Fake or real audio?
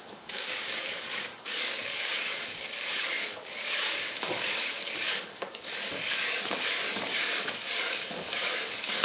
fake